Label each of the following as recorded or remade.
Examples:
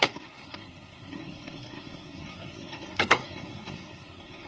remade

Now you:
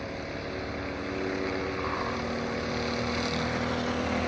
recorded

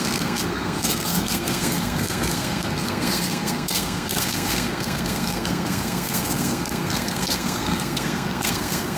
remade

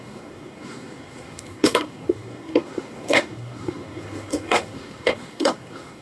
remade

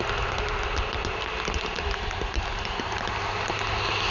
recorded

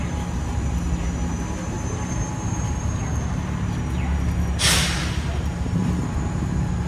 recorded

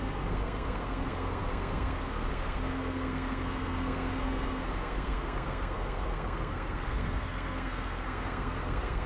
remade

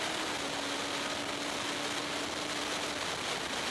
recorded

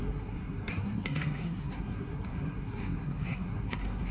remade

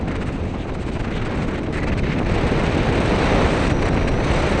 recorded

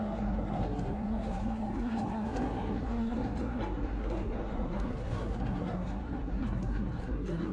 remade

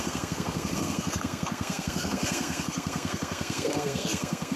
remade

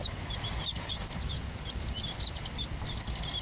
recorded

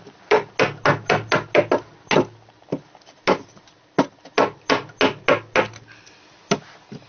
recorded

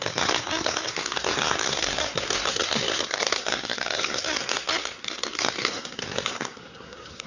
remade